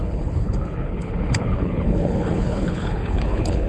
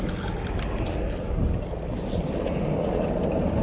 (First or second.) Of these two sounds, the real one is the second